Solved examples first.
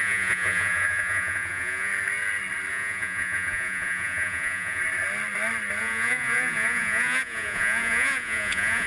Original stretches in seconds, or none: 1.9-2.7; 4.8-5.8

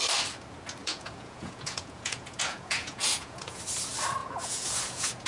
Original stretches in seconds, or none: 0.0-0.8; 3.6-4.2